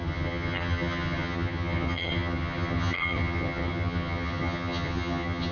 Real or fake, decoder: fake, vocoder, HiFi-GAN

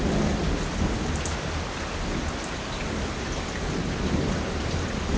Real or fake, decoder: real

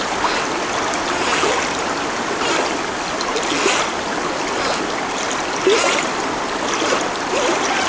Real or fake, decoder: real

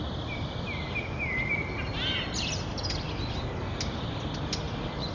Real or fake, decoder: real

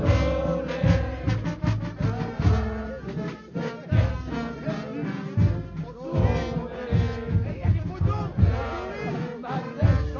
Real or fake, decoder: real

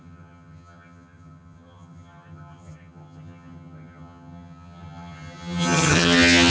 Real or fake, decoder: fake, vocoder, HiFi-GAN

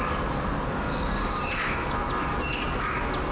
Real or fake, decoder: real